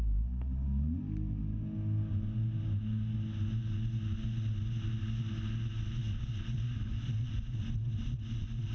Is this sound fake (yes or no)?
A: no